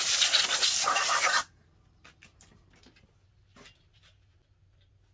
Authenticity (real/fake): real